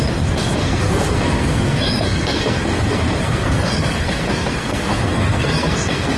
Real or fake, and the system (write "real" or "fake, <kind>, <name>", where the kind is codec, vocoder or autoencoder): fake, codec, SNAC